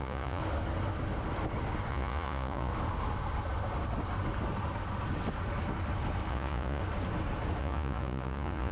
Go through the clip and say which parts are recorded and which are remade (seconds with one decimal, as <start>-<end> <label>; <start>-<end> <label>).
0.0-0.4 remade; 0.4-1.9 recorded; 1.9-2.7 remade; 2.7-6.3 recorded; 6.3-6.8 remade; 6.8-7.6 recorded; 7.6-8.7 remade